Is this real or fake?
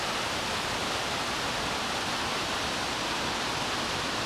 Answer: fake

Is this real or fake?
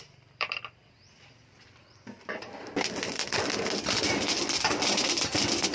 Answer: fake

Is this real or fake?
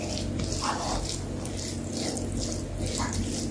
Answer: real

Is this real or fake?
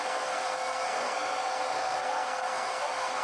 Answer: fake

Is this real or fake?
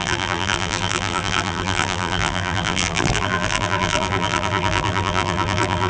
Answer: fake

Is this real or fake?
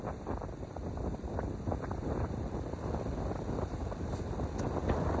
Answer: real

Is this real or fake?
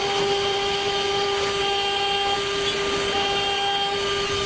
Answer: real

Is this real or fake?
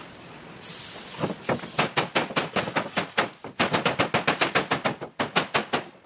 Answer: real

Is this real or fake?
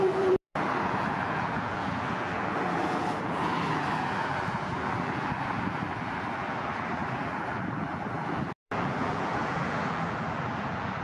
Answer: fake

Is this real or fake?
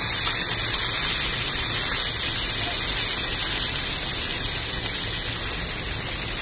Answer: real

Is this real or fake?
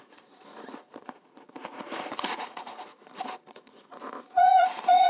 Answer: fake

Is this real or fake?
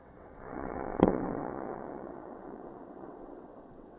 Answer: fake